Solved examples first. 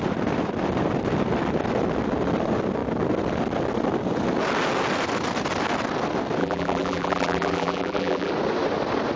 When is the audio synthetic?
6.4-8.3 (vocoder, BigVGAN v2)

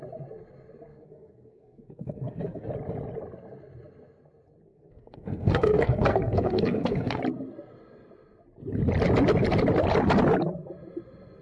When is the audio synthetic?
0.9-2.7 (codec, SNAC); 4.7-7.2